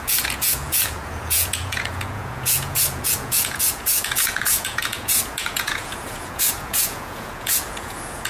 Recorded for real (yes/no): no